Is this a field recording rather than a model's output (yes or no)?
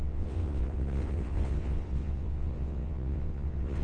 no